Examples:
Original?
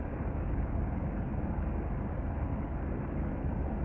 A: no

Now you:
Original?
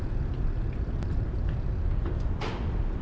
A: yes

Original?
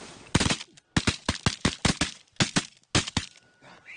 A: yes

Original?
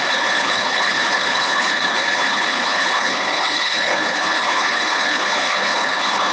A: no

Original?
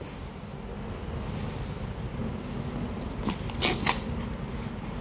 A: yes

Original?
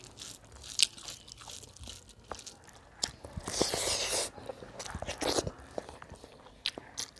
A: yes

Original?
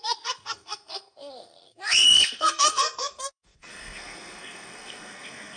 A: no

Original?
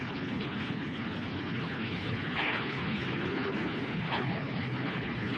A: no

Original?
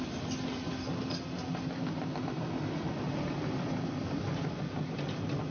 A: yes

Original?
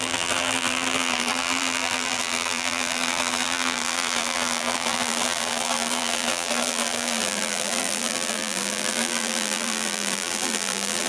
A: no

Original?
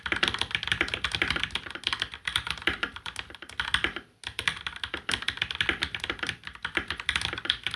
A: yes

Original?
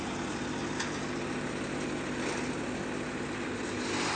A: yes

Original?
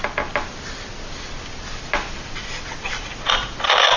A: yes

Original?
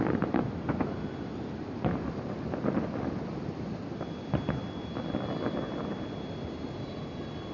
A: yes